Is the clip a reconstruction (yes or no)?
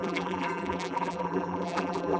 yes